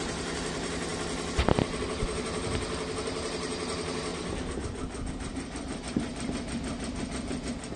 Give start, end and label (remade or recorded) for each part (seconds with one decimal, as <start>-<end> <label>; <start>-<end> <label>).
0.0-0.9 remade; 0.9-1.8 recorded; 1.8-4.1 remade; 4.1-5.1 recorded; 5.1-6.1 remade; 6.1-7.8 recorded